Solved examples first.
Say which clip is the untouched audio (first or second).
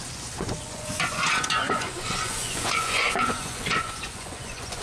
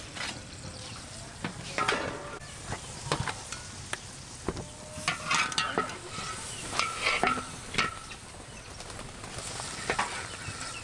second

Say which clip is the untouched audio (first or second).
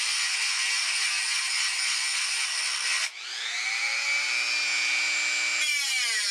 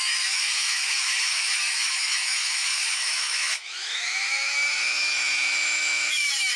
first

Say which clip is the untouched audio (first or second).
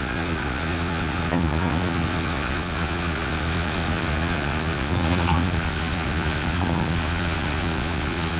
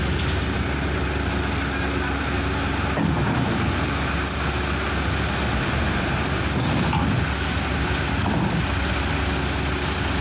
second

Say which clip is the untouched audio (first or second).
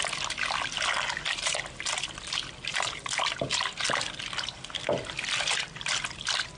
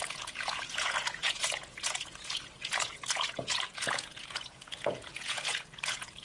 first